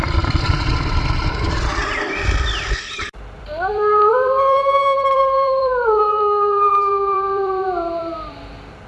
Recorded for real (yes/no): no